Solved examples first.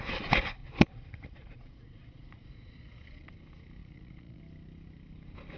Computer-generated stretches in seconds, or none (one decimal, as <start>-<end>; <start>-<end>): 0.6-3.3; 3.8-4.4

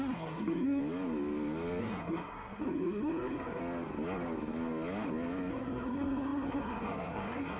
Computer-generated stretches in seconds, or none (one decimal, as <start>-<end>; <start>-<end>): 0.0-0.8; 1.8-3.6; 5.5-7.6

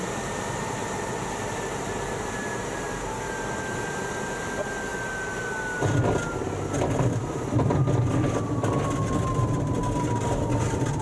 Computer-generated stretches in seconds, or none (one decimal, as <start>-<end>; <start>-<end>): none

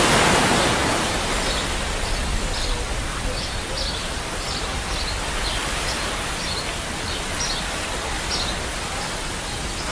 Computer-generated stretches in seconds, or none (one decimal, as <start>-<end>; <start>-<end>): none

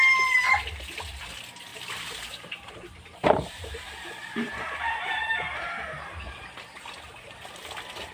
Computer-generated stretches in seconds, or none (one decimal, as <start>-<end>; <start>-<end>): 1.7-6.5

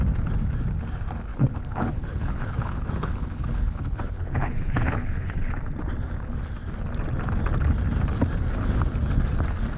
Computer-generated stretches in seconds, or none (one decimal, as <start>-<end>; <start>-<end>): 1.3-5.5

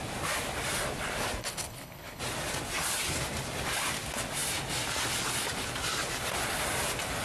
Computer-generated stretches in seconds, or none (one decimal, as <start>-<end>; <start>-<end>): 1.4-2.2

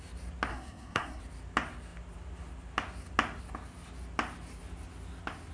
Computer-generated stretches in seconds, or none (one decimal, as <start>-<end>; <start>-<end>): 0.5-1.2